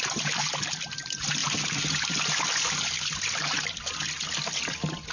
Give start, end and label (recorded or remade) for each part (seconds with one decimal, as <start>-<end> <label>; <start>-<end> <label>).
0.0-5.1 recorded